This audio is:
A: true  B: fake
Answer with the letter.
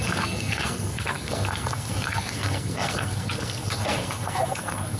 B